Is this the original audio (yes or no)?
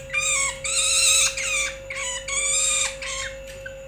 yes